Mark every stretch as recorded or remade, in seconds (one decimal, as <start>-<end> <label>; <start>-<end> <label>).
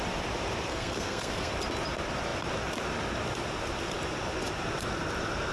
0.0-0.7 recorded; 0.7-1.5 remade; 1.5-5.5 recorded